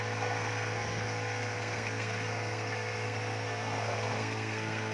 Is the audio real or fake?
fake